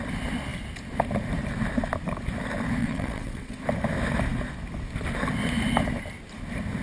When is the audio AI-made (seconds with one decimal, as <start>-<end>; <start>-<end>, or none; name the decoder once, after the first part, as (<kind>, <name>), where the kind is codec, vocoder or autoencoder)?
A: 2.8-3.6 (vocoder, WaveNeXt)